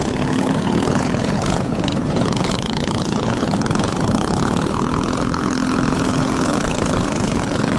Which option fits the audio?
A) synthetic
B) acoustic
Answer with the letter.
A